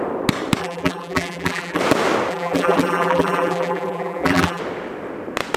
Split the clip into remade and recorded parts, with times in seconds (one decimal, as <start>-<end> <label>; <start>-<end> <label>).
0.0-0.6 recorded; 0.6-1.8 remade; 1.8-2.3 recorded; 2.3-4.6 remade; 4.6-5.6 recorded